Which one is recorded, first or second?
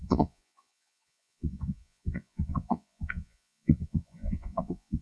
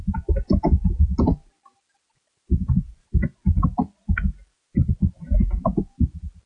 second